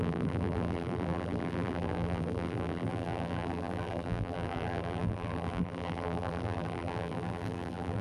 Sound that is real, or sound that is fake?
fake